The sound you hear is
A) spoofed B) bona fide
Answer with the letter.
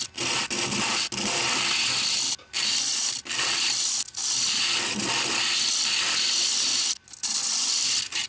B